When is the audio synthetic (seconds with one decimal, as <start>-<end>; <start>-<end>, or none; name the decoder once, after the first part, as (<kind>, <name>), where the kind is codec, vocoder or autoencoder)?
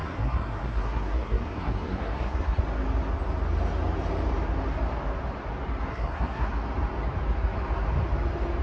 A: 0.0-2.6 (codec, SNAC); 5.9-6.5